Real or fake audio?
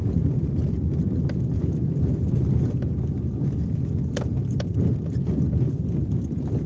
real